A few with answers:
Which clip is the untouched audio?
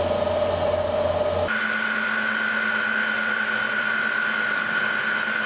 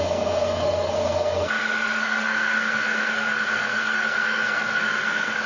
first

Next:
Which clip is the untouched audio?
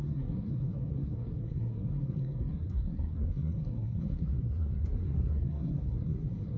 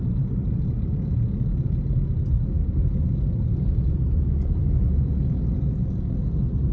second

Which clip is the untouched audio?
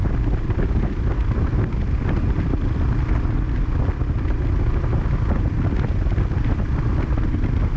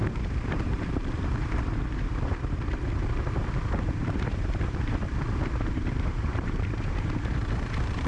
first